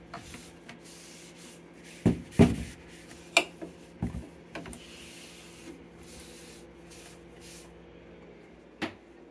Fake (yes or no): no